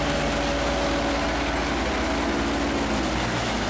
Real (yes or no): yes